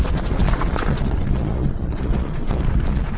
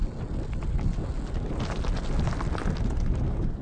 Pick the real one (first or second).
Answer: second